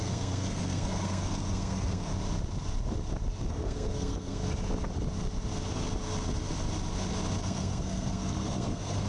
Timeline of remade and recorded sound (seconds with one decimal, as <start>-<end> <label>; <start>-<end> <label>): 0.0-2.1 remade; 2.1-3.5 recorded; 3.5-4.4 remade; 4.4-7.4 recorded; 7.4-9.1 remade